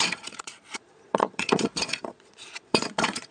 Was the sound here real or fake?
fake